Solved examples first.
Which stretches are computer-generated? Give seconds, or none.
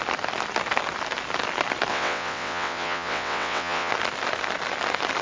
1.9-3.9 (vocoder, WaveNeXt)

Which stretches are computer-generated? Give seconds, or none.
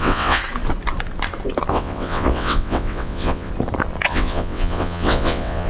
0.0-0.4 (vocoder, WaveNeXt); 1.7-3.5; 4.1-5.7